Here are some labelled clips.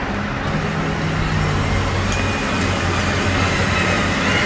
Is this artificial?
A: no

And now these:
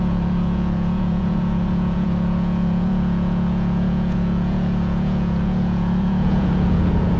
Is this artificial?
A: yes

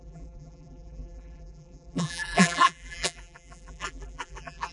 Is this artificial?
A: yes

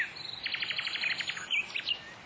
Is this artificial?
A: no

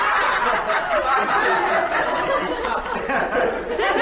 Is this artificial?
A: yes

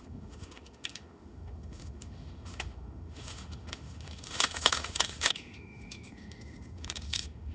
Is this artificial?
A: yes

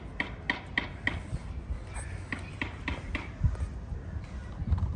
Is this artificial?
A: no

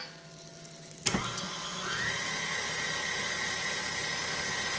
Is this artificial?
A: no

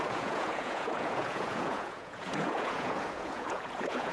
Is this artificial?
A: yes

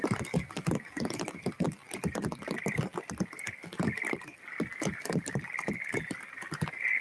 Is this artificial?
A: no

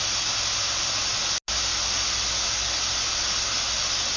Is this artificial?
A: no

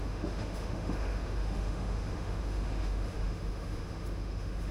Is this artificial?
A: yes